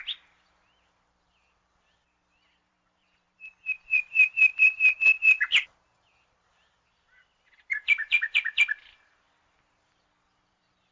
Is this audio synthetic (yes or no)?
yes